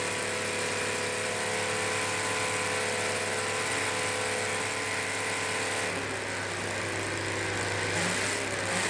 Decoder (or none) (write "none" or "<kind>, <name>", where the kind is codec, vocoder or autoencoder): none